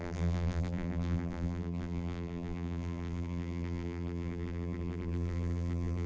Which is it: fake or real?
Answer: fake